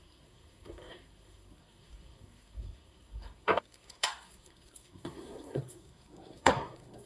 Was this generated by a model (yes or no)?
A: yes